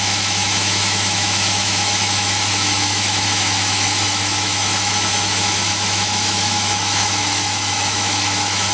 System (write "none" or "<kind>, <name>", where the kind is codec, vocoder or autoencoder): autoencoder, DAC-VAE